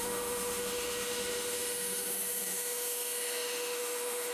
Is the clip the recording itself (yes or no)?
no